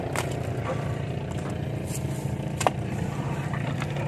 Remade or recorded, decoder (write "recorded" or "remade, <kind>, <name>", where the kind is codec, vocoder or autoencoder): recorded